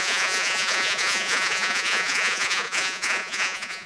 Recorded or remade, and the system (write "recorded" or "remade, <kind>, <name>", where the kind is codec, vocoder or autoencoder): remade, vocoder, Vocos